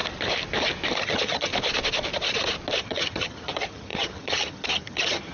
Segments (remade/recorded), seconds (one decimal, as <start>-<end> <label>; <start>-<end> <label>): 0.0-1.0 recorded; 1.0-1.5 remade; 1.5-2.8 recorded; 2.8-5.3 remade